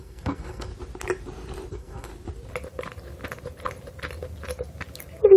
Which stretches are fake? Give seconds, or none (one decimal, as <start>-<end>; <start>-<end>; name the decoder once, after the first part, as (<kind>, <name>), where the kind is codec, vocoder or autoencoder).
0.0-0.7 (codec, SNAC); 1.7-2.1